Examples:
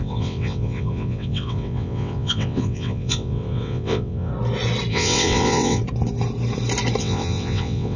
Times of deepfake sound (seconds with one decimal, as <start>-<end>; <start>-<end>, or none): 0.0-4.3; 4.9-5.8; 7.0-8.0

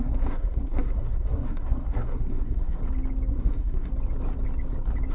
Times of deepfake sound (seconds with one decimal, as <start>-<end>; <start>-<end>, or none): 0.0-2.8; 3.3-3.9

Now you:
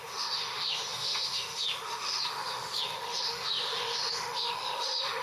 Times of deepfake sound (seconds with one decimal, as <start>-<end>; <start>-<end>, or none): 0.0-5.2

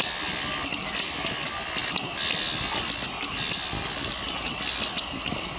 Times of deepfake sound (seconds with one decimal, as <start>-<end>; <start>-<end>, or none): none